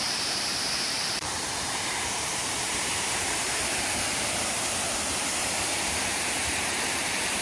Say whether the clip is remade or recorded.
remade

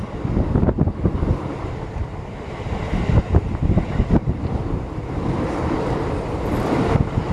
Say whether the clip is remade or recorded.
remade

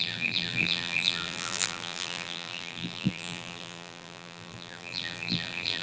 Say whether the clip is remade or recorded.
remade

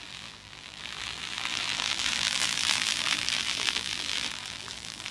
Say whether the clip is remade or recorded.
remade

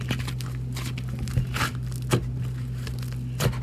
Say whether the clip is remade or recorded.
recorded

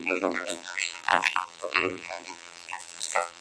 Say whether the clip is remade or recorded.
remade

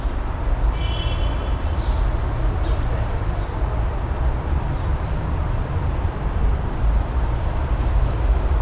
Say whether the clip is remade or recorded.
remade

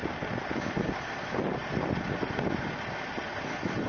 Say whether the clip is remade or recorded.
recorded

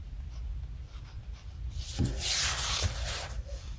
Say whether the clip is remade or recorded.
remade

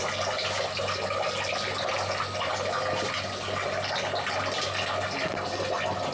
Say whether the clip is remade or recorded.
recorded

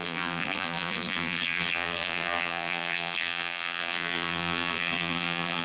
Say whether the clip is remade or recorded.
remade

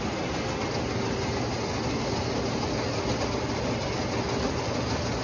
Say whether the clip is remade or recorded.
recorded